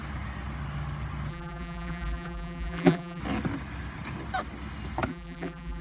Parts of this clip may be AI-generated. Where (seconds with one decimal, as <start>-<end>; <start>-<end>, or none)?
1.3-3.2; 5.1-5.8